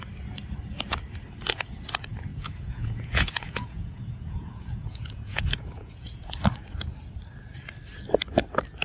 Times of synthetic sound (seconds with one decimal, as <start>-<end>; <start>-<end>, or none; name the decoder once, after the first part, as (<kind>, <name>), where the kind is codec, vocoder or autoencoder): 2.3-6.3 (vocoder, Vocos)